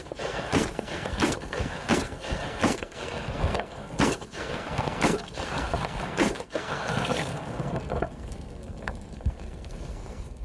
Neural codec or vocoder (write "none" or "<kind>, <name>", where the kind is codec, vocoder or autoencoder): codec, SNAC